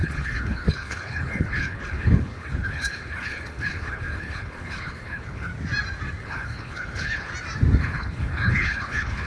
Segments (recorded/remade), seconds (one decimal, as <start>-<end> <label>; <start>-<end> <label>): 0.0-5.5 remade; 5.5-6.2 recorded; 6.2-7.3 remade; 7.3-7.8 recorded; 7.8-9.3 remade